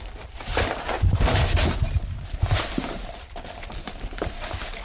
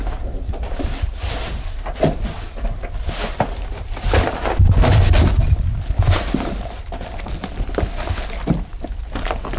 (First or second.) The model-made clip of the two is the first